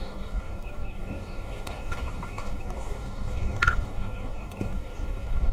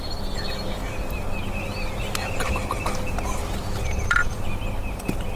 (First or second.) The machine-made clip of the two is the first